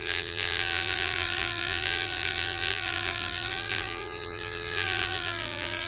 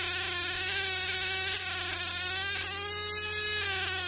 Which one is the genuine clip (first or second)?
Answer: second